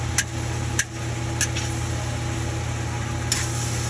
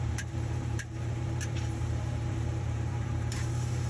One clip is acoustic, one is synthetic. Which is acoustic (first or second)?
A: first